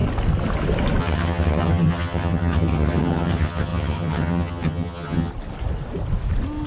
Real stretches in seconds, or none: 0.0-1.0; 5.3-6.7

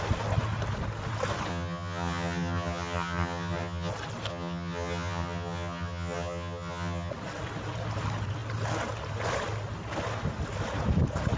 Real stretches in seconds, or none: 0.0-1.5; 3.9-4.3; 7.1-11.4